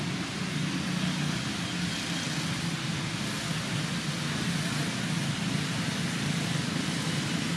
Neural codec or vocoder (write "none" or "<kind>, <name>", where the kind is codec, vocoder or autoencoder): none